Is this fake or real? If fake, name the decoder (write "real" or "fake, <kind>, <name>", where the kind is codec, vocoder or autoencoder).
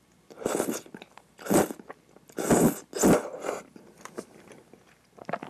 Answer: real